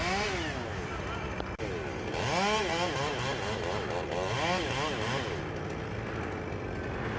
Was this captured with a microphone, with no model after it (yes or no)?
yes